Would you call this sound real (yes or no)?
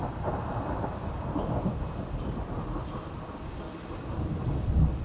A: yes